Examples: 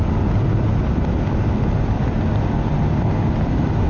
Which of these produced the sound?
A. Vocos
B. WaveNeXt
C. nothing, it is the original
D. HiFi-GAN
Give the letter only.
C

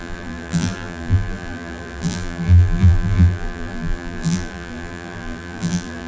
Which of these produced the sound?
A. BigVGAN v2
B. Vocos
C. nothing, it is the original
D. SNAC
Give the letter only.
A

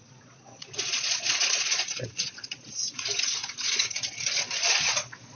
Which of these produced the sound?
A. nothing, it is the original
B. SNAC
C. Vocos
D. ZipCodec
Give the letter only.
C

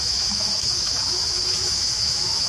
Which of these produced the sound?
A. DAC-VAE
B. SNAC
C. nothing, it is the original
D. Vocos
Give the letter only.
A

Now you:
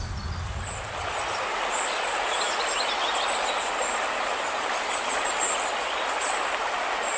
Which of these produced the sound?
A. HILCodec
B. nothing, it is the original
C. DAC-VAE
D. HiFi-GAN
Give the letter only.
B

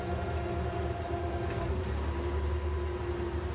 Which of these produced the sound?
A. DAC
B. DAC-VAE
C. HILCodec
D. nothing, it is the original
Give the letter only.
D